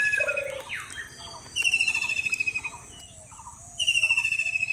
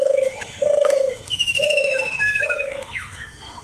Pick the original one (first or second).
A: first